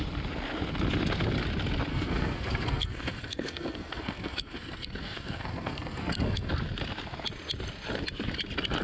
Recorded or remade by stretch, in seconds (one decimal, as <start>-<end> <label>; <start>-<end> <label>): 0.0-1.9 recorded; 1.9-6.5 remade; 6.5-8.8 recorded